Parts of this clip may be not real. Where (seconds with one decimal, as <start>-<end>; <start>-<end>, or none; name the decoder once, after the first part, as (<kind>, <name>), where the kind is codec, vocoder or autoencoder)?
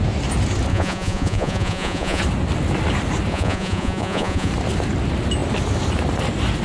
0.7-2.2 (vocoder, Vocos); 3.3-4.5